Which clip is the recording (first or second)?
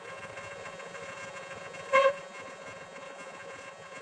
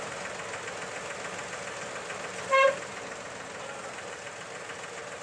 second